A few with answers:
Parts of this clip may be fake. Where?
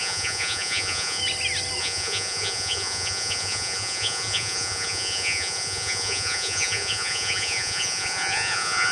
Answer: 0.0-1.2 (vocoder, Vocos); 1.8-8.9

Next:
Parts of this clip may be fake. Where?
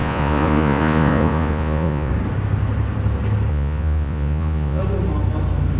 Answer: 0.0-2.1 (vocoder, Vocos); 3.5-4.8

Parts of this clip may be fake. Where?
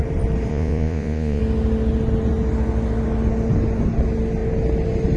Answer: 0.5-1.4 (vocoder, Vocos)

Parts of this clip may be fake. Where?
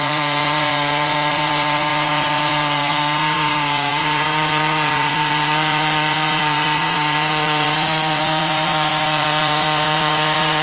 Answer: 0.0-10.6 (vocoder, Vocos)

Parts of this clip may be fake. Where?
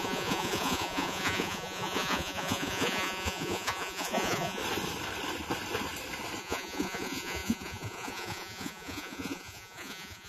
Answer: 0.0-4.6 (vocoder, Vocos); 6.4-10.3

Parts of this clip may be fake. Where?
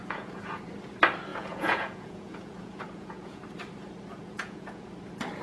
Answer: 0.0-0.6 (vocoder, Vocos); 1.3-3.4; 4.1-4.9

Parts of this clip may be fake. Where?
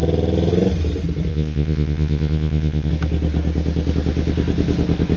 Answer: 1.3-2.9 (vocoder, Vocos)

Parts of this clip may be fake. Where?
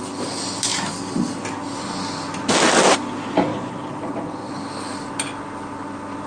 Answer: 3.5-4.5 (vocoder, Vocos)